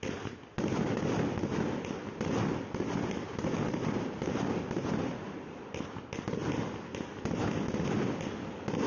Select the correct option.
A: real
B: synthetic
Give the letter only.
A